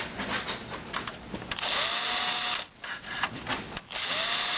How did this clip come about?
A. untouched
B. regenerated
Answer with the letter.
A